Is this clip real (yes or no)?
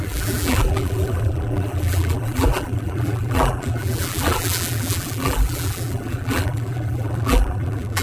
no